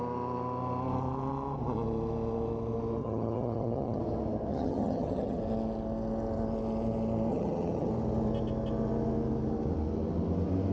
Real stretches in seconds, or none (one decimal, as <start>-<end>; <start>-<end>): 0.0-3.0; 4.0-4.5; 5.4-7.3; 7.9-10.7